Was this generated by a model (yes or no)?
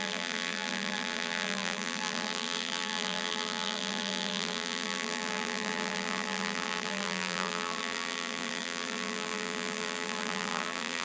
yes